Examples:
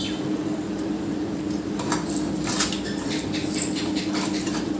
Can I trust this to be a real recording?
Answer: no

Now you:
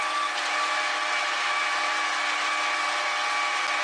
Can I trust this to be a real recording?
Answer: yes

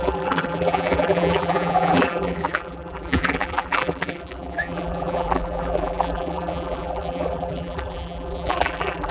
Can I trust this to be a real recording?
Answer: no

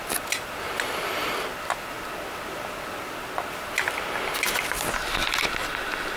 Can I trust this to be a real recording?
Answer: yes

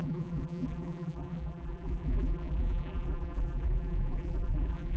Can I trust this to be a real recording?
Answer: no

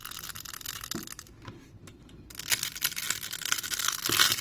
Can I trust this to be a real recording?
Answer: yes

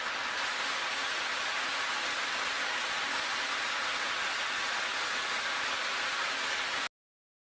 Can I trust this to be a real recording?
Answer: yes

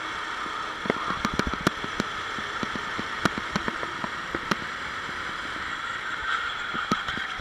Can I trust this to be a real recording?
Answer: yes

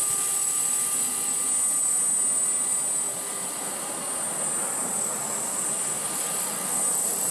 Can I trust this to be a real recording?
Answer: yes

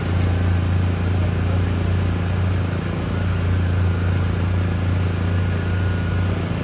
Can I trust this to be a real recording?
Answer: yes